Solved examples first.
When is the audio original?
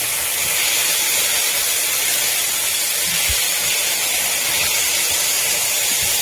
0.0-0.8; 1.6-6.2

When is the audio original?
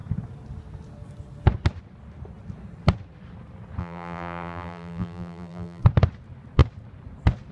0.0-3.8; 5.8-7.5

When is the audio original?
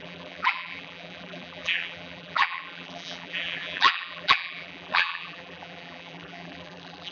none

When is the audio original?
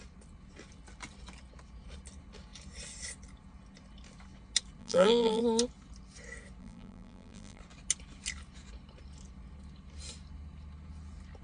0.0-4.8; 5.4-6.6; 7.6-11.4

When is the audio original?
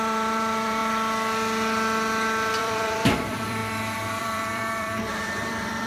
0.8-2.6; 3.6-4.2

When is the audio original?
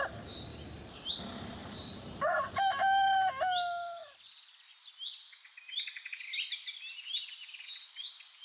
0.0-0.5; 1.1-1.6; 2.5-8.4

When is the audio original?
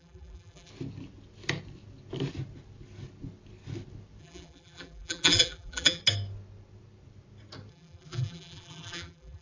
0.7-4.2; 6.0-7.7